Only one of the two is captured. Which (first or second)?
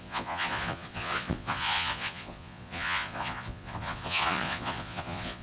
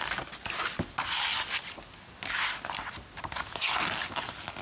second